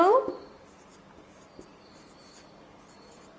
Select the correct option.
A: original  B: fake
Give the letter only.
B